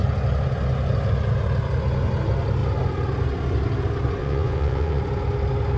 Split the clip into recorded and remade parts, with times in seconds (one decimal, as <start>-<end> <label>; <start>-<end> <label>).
0.0-4.2 recorded; 4.2-5.0 remade; 5.0-5.8 recorded